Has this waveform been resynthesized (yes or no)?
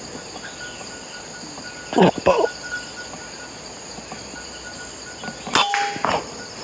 no